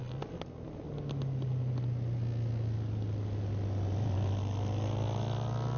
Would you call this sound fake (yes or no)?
no